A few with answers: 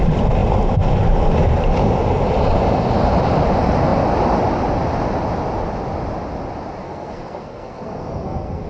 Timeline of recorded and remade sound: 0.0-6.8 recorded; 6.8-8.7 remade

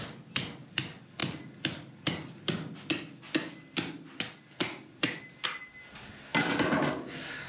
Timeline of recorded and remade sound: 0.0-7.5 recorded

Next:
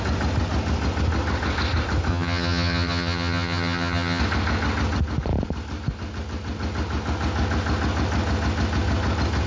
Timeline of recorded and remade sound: 0.0-2.1 recorded; 2.1-4.2 remade; 4.2-9.5 recorded

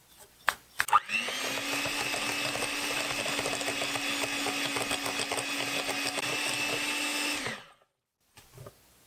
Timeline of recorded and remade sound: 0.0-9.1 recorded

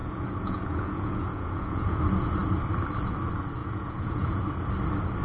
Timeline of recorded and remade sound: 0.0-2.0 remade; 2.0-3.6 recorded; 3.6-4.4 remade; 4.4-5.2 recorded

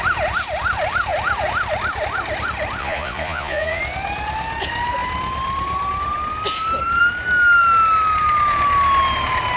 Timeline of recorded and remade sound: 0.0-2.8 recorded; 2.8-3.8 remade; 3.8-9.6 recorded

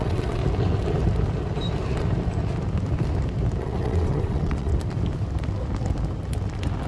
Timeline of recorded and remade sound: 0.0-0.4 remade; 0.4-3.6 recorded; 3.6-4.7 remade; 4.7-6.9 recorded

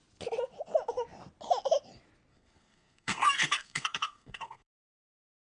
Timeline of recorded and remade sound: 0.0-2.3 recorded; 2.3-4.7 remade; 4.7-5.5 recorded